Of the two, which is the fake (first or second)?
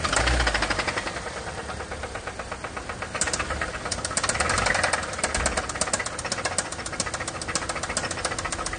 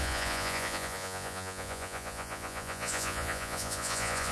second